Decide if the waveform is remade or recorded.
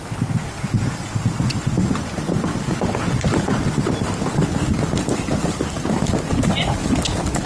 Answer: recorded